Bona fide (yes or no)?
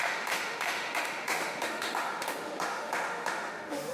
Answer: no